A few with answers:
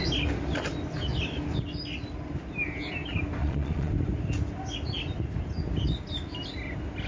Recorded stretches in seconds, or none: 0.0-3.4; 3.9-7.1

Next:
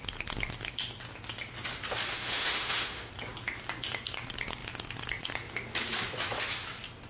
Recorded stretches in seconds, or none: 0.0-2.1; 3.1-7.1

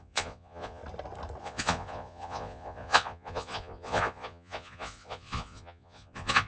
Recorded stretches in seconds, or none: 0.8-1.4

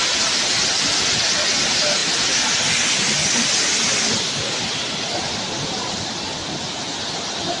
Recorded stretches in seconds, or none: 0.0-7.6

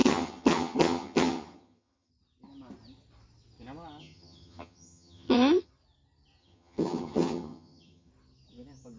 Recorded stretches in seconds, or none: 2.1-4.0; 5.7-6.4; 8.1-9.0

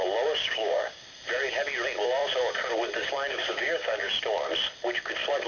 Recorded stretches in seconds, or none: 0.0-0.4; 1.0-3.0; 4.1-5.5

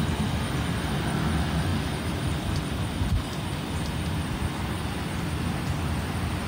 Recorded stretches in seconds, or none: 0.0-6.5

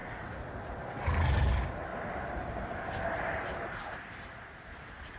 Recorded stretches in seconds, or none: 0.0-5.2